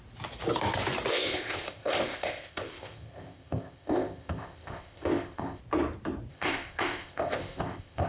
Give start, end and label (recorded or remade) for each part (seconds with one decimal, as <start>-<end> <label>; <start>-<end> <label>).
0.0-1.1 recorded; 1.1-5.6 remade; 5.6-6.3 recorded; 6.3-8.1 remade